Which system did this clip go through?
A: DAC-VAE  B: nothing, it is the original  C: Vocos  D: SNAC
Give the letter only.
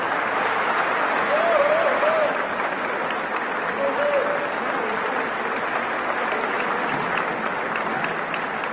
B